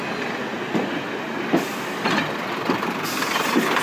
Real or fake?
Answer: real